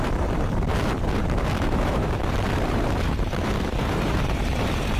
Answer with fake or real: fake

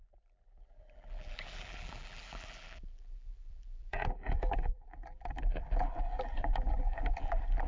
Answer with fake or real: fake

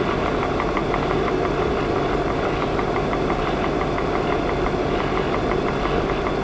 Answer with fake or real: real